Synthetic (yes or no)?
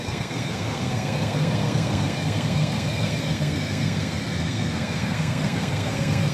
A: yes